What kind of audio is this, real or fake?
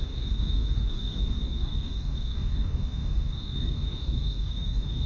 fake